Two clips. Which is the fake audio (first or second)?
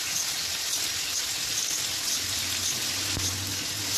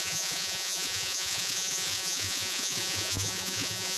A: second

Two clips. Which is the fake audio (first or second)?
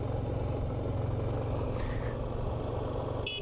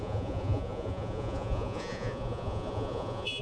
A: second